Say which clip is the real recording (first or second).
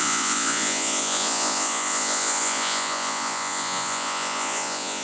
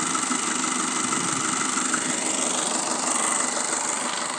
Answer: second